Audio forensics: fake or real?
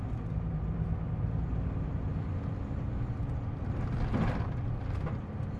real